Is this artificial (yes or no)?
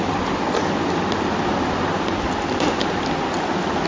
no